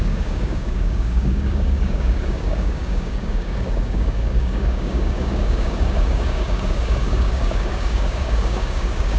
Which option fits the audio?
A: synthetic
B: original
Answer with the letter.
A